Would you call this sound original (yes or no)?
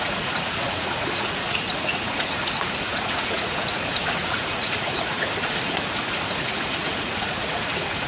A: no